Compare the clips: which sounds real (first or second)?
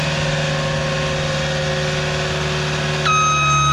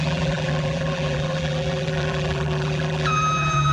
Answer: first